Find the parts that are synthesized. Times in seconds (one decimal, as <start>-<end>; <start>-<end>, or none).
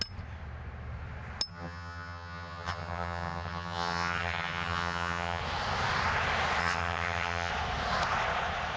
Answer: 1.5-5.4; 6.6-7.5